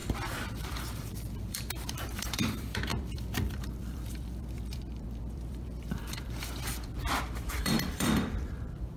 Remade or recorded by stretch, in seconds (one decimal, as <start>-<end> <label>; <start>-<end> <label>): 0.0-9.0 remade